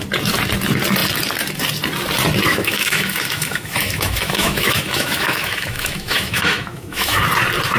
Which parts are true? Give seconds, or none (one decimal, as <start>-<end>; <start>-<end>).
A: 0.0-2.5; 7.2-7.8